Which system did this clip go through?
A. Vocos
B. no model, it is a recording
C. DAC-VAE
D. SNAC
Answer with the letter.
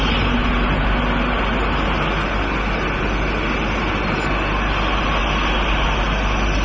B